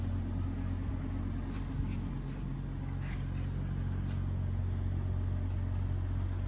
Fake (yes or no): no